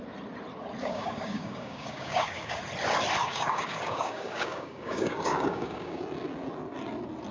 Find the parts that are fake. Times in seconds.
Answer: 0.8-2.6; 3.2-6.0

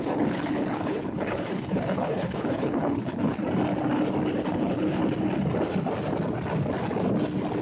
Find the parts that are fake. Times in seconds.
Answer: 0.0-3.4; 4.5-5.0

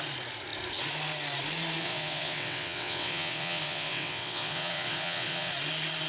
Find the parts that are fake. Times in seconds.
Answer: 1.8-5.5

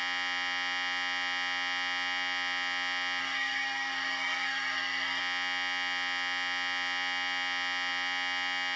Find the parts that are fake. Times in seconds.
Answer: 3.2-5.2